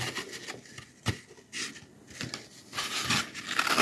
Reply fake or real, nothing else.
real